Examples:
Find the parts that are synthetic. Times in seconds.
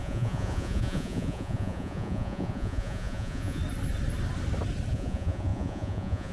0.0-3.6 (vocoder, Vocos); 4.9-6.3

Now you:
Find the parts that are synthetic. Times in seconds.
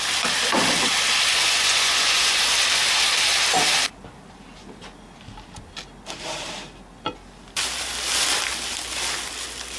1.3-2.5 (vocoder, Vocos)